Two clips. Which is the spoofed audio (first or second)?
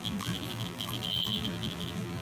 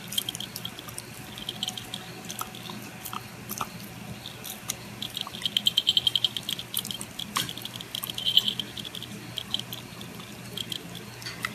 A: first